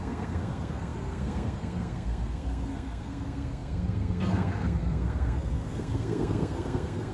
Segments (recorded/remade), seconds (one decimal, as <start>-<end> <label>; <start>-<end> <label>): 0.0-7.1 remade